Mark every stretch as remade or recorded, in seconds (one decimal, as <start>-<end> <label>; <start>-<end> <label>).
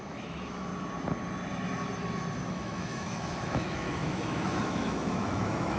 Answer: 0.0-0.7 remade; 0.7-2.5 recorded; 2.5-5.8 remade